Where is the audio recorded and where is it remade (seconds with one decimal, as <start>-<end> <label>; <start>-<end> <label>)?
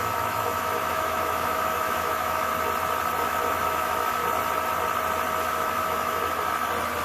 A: 0.0-2.5 remade; 2.5-3.2 recorded; 3.2-4.2 remade; 4.2-5.4 recorded; 5.4-6.2 remade; 6.2-7.0 recorded